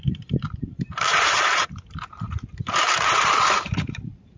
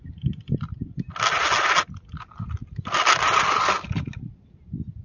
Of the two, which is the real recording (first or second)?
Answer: second